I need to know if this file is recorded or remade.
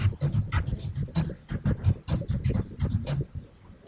recorded